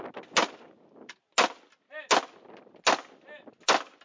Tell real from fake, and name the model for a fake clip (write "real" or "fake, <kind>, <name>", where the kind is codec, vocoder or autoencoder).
real